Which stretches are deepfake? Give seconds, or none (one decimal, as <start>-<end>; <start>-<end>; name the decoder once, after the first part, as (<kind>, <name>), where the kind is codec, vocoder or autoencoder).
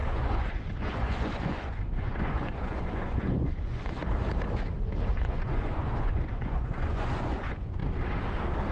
0.0-4.0 (vocoder, Vocos); 5.2-7.8